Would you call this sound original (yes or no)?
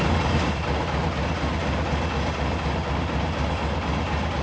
yes